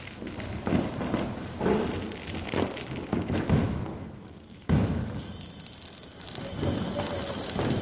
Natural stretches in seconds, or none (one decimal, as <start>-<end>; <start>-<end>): 0.0-3.0; 5.3-7.8